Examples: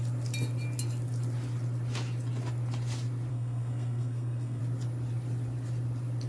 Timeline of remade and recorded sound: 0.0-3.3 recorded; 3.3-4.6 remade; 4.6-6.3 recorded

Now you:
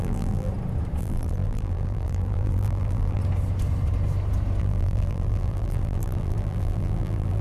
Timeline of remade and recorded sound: 0.0-0.5 remade; 0.5-1.0 recorded; 1.0-3.2 remade; 3.2-4.6 recorded; 4.6-7.4 remade